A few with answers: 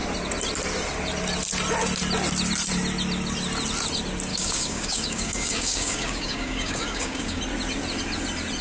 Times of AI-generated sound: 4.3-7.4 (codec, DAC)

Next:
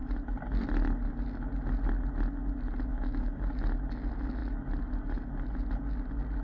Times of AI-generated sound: 2.9-3.5 (codec, DAC)

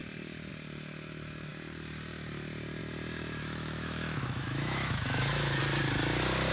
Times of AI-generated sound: 3.4-5.6 (autoencoder, DAC-VAE)

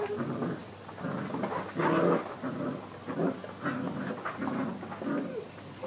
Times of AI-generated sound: none

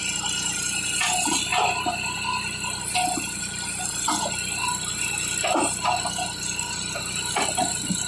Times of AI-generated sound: none